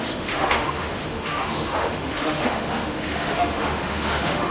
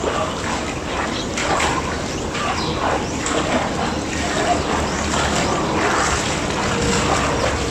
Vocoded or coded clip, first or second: first